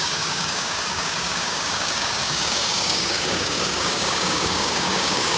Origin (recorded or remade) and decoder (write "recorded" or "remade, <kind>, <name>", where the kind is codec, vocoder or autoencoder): remade, codec, DAC